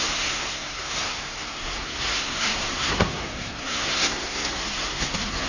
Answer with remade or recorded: remade